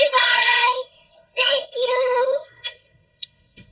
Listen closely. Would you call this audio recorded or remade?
remade